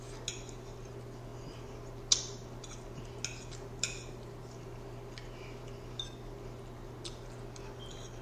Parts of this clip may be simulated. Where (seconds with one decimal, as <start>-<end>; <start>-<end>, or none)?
none